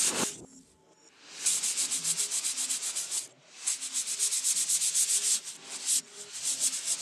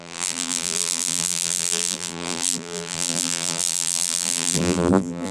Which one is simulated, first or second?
second